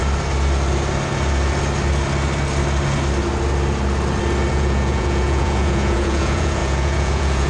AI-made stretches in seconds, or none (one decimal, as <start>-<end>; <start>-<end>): 4.5-7.5